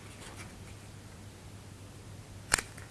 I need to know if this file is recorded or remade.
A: recorded